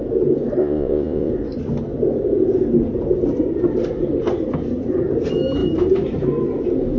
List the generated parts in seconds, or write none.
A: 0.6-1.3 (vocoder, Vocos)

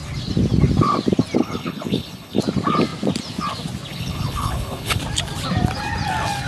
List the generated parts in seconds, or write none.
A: 1.4-2.4 (codec, HILCodec); 3.9-5.0